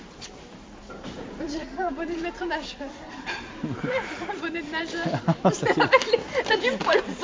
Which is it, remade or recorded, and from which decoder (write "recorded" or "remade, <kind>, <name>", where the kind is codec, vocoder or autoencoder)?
remade, vocoder, BigVGAN v2